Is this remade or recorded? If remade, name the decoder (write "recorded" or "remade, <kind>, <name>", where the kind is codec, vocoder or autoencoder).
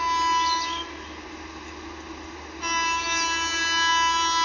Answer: recorded